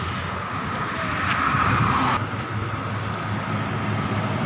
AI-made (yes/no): no